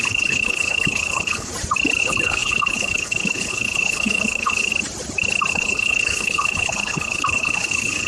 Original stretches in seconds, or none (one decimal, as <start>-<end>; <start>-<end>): 1.5-2.0; 4.7-5.5